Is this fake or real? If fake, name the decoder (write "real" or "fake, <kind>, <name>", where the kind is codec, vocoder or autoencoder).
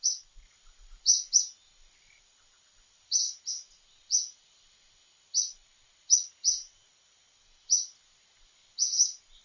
real